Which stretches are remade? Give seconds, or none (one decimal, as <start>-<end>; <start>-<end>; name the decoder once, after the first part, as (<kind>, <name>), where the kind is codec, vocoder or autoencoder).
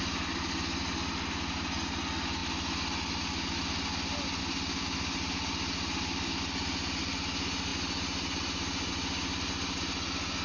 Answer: none